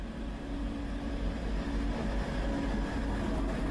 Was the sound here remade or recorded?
recorded